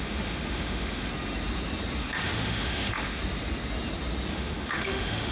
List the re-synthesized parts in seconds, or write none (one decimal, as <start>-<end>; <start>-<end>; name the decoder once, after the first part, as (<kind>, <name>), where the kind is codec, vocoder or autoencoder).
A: 0.0-1.1 (autoencoder, DAC-VAE); 2.0-3.2; 4.3-5.3